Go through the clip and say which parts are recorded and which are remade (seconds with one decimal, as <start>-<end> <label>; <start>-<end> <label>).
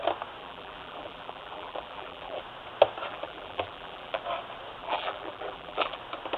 0.0-0.4 recorded; 0.4-2.4 remade; 2.4-3.1 recorded; 3.1-4.2 remade; 4.2-4.8 recorded; 4.8-6.0 remade; 6.0-6.4 recorded